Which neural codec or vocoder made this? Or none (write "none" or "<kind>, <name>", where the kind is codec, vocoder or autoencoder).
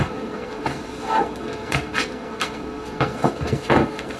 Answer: codec, SNAC